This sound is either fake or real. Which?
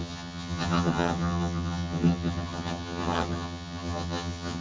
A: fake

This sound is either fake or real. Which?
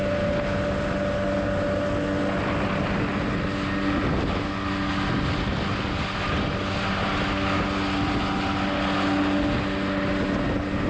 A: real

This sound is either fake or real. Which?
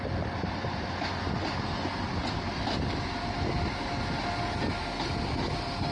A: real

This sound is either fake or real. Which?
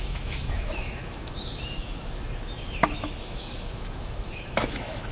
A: fake